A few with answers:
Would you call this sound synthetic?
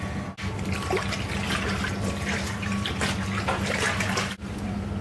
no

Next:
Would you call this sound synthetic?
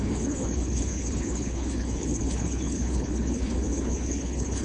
yes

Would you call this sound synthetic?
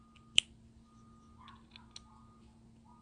no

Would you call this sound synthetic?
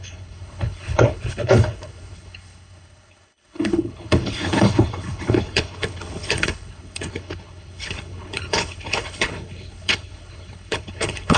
yes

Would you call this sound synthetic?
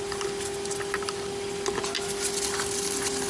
no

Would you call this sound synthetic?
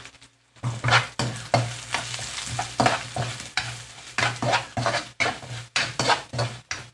no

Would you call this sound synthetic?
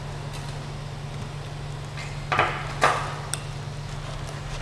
no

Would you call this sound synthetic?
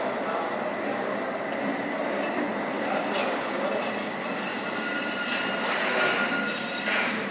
no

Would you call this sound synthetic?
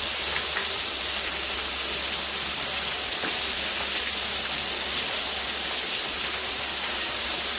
no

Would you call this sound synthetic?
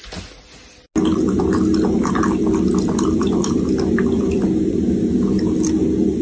no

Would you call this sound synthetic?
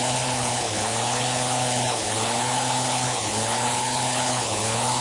yes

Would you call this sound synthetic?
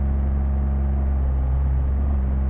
no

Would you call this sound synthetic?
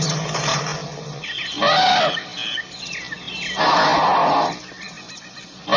no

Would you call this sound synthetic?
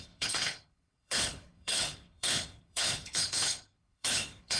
yes